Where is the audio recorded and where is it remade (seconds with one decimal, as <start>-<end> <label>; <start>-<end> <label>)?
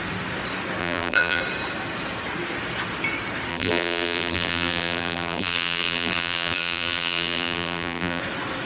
0.0-0.8 recorded; 0.8-1.4 remade; 1.4-3.5 recorded; 3.5-8.2 remade; 8.2-8.7 recorded